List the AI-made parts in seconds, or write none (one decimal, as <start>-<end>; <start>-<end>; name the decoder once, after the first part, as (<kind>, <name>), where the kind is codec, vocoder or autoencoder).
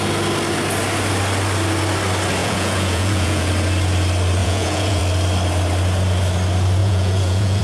2.4-3.5 (vocoder, Vocos); 4.4-5.0; 6.8-7.6